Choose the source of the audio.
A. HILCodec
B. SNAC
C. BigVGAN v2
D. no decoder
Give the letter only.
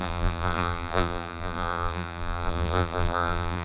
C